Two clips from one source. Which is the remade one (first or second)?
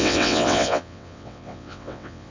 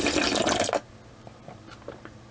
first